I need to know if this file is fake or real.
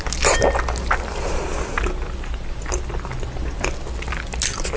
real